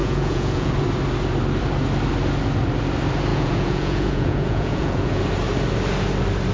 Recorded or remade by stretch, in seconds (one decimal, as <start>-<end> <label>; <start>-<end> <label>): 0.0-0.7 remade; 0.7-3.3 recorded; 3.3-5.2 remade; 5.2-6.5 recorded